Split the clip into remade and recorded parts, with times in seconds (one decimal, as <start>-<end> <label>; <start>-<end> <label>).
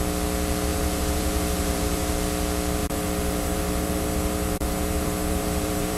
0.0-0.7 recorded; 0.7-2.1 remade; 2.1-2.8 recorded; 2.8-6.0 remade